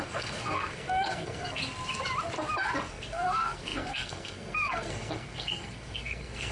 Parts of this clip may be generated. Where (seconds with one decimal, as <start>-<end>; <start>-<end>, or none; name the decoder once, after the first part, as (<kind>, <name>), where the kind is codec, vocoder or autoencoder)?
0.0-1.6 (codec, SNAC); 2.9-6.5